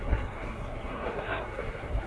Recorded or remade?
remade